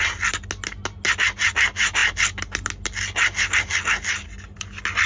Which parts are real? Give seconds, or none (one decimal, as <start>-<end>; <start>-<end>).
0.0-5.1